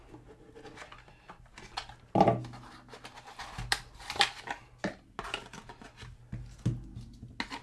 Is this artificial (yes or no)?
no